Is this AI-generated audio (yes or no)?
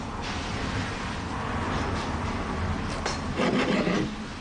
no